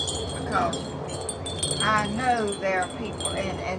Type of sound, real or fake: real